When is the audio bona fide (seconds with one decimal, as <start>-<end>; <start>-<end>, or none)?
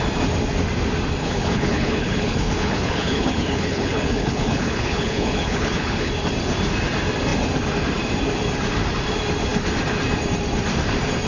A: 0.0-1.2; 6.1-11.3